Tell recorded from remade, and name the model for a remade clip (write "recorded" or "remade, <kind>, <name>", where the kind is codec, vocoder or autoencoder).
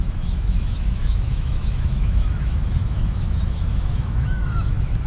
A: remade, autoencoder, DAC-VAE